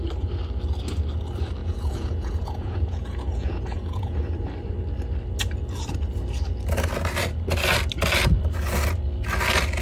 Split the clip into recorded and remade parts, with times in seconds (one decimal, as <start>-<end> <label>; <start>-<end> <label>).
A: 0.0-1.6 recorded; 1.6-4.2 remade; 4.2-9.8 recorded